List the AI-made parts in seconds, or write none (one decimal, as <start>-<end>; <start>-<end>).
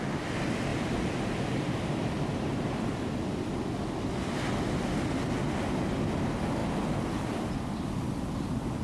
none